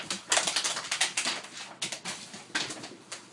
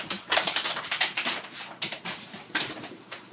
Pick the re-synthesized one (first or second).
second